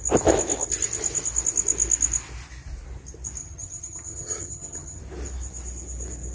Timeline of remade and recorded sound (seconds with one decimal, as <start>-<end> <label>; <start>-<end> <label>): 0.0-3.4 recorded; 3.4-5.0 remade; 5.0-6.3 recorded